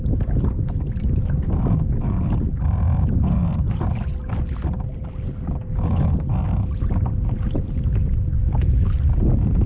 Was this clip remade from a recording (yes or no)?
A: no